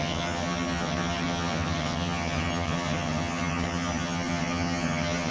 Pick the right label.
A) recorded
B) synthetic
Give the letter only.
B